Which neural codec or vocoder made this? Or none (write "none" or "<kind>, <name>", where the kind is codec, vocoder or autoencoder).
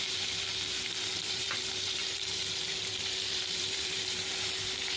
vocoder, BigVGAN v2